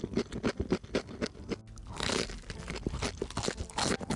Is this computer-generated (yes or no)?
no